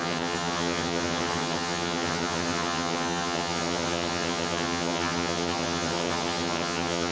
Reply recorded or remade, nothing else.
remade